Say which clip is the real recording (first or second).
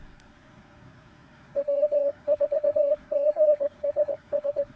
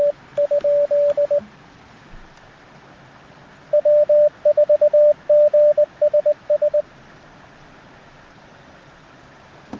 second